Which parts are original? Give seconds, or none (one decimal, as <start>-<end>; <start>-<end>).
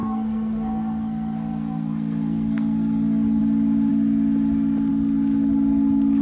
3.4-6.2